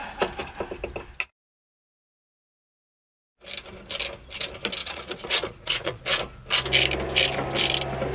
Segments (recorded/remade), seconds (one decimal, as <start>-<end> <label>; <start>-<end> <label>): 0.0-4.8 recorded; 4.8-6.0 remade; 6.0-8.1 recorded